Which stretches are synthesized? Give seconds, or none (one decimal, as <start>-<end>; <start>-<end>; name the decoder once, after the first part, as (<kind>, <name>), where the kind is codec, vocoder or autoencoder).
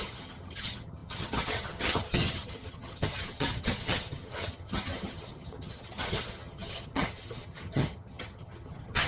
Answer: 0.0-9.1 (vocoder, HiFi-GAN)